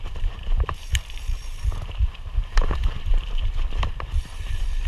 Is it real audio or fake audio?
fake